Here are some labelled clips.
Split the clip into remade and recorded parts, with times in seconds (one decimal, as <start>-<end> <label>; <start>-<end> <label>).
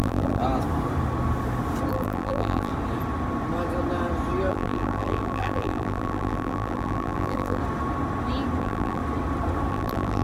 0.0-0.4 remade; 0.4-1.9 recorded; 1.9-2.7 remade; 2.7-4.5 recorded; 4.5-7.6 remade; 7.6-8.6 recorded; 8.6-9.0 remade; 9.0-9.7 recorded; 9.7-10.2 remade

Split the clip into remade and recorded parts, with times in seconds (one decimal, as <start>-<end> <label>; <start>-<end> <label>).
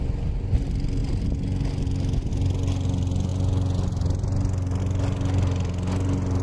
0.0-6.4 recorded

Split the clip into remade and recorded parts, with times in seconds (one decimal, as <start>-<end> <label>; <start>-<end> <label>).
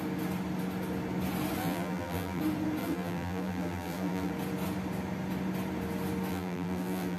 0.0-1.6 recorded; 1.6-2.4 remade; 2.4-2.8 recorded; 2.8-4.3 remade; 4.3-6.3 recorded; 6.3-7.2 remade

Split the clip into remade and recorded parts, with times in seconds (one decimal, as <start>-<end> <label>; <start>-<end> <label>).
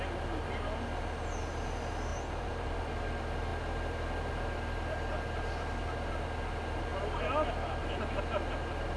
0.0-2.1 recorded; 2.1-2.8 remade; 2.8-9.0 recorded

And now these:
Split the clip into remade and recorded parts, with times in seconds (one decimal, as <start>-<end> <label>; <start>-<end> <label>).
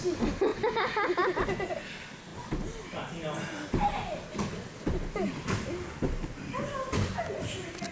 0.0-7.9 recorded